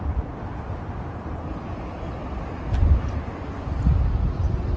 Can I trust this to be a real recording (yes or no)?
yes